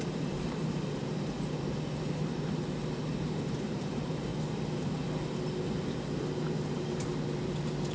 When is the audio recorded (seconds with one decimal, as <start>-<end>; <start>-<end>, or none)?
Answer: 2.8-3.3; 4.3-6.3

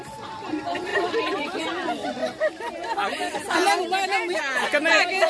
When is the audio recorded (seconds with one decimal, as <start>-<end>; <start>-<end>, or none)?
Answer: 0.0-0.9; 1.6-2.2; 3.8-5.3

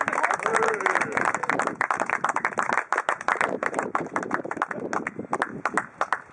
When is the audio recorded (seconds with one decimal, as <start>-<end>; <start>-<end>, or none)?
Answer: 0.0-0.5; 4.3-6.3

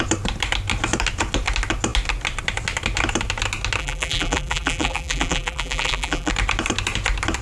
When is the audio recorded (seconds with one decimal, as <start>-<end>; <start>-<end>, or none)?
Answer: 0.0-3.8; 6.3-7.4

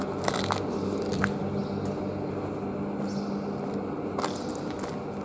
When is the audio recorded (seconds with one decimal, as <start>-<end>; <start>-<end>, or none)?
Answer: 0.0-1.1; 1.6-5.2

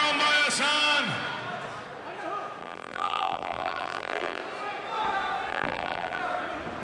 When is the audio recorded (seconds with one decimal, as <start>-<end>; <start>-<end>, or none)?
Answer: 0.0-2.6; 4.4-5.5; 6.2-6.8

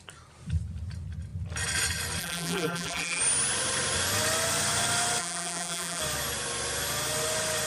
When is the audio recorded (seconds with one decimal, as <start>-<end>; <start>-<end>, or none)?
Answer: 0.0-2.2; 3.2-5.2; 6.0-7.7

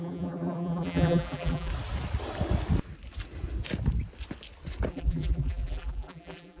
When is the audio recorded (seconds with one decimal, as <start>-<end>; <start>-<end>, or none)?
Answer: 1.7-4.9